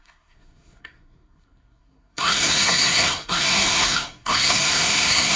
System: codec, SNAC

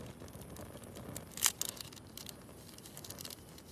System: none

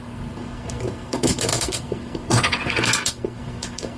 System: codec, SNAC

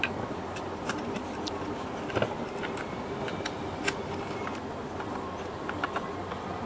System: none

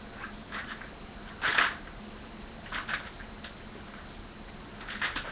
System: none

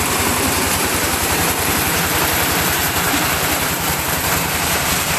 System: vocoder, BigVGAN v2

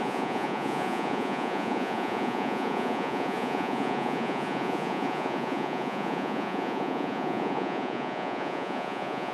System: vocoder, Vocos